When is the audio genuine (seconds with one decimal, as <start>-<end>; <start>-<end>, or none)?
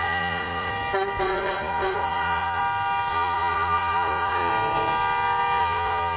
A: 0.7-1.2; 2.6-3.1; 4.5-5.6